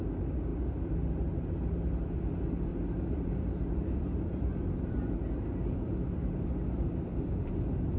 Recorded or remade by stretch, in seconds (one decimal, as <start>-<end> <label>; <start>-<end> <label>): 0.0-2.7 recorded; 2.7-7.5 remade; 7.5-8.0 recorded